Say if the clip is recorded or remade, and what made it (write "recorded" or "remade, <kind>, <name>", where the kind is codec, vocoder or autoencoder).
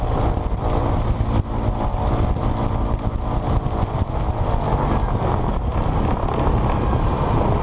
recorded